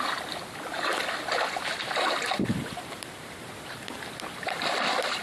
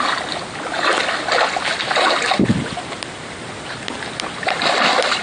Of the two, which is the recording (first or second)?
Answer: second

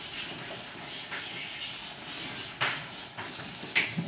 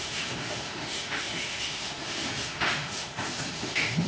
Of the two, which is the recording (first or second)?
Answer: first